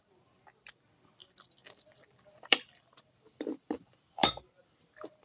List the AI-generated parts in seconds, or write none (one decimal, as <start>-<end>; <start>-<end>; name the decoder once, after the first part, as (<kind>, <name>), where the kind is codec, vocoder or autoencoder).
1.2-4.3 (vocoder, BigVGAN v2)